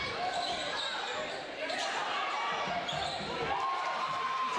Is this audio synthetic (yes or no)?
yes